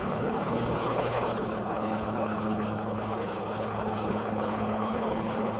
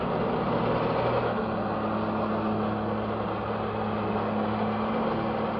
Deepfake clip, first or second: first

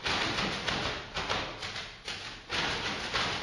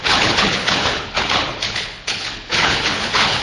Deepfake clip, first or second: second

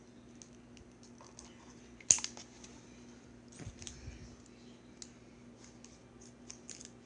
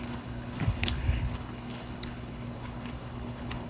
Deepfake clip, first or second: second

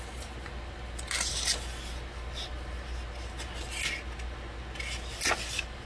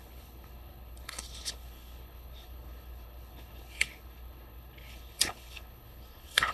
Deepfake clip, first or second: second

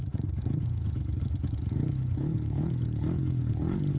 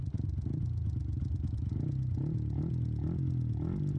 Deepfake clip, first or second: first